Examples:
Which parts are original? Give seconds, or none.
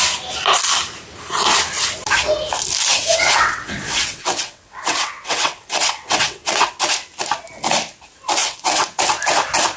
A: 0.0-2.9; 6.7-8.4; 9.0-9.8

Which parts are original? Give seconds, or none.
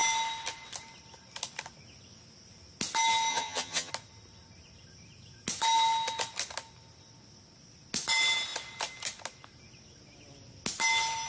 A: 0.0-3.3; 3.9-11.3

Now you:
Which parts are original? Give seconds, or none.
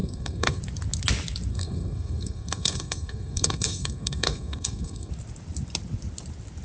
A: 0.6-1.5; 5.1-6.6